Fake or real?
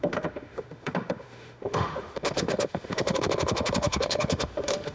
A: fake